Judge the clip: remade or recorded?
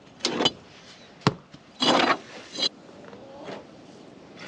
recorded